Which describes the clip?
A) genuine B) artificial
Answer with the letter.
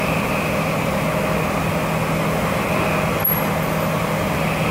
A